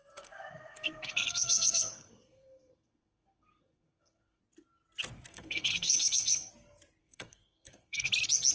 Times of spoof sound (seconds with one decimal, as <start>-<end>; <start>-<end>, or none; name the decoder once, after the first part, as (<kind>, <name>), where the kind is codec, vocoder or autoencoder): 0.0-4.4 (codec, SNAC); 5.3-6.5; 7.0-8.1